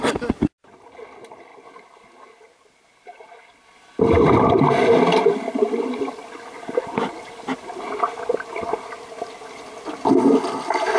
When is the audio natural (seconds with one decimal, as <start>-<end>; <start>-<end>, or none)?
0.0-11.0